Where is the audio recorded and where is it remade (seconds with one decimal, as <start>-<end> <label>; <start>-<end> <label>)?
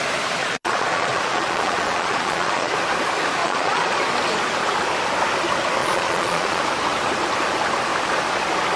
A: 0.0-0.4 recorded; 0.4-2.7 remade; 2.7-3.4 recorded; 3.4-4.0 remade; 4.0-5.8 recorded; 5.8-6.6 remade; 6.6-8.8 recorded